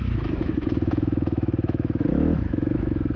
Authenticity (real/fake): fake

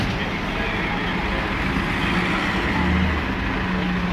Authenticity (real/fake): real